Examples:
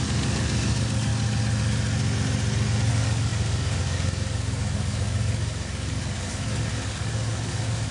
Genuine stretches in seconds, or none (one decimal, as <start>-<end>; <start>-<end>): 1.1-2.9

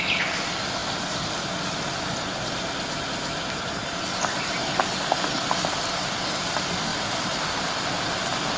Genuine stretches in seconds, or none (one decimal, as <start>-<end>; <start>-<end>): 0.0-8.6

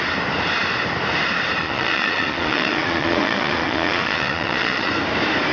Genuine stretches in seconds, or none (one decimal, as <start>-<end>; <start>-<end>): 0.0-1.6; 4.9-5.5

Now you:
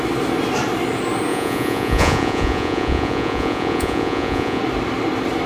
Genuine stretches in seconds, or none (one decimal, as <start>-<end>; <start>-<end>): 0.0-1.3; 4.6-5.5